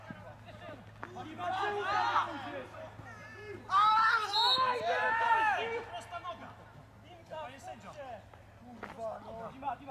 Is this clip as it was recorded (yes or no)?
yes